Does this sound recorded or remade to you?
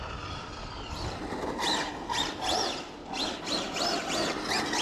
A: recorded